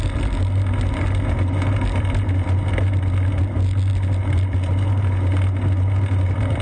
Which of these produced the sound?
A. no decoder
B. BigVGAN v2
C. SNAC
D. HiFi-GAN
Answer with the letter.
A